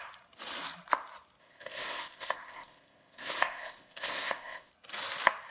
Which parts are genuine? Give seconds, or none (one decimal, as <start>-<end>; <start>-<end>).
0.0-1.4; 4.7-5.5